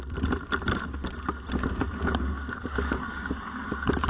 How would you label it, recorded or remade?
recorded